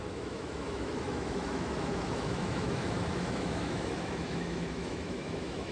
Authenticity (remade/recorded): remade